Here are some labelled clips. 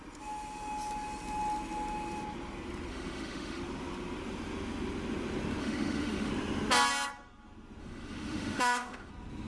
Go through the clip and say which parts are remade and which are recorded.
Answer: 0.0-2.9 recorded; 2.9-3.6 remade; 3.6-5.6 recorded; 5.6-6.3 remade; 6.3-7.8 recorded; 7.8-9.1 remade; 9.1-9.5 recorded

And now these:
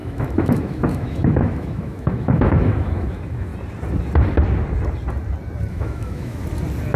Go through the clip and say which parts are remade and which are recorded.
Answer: 0.0-3.5 remade; 3.5-5.7 recorded; 5.7-6.4 remade; 6.4-7.0 recorded

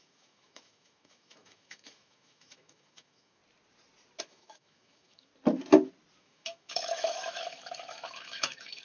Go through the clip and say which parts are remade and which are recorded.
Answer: 0.0-3.4 remade; 3.4-4.2 recorded; 4.2-5.3 remade; 5.3-6.2 recorded; 6.2-8.8 remade

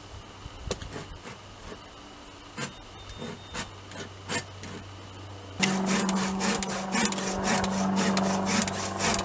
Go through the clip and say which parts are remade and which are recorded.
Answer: 0.0-9.2 recorded

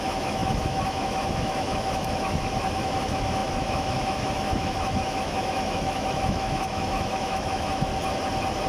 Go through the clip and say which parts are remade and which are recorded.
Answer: 0.0-7.9 remade; 7.9-8.7 recorded